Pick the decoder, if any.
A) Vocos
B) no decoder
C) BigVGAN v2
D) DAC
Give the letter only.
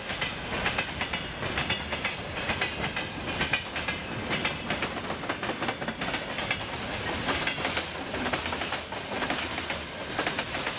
B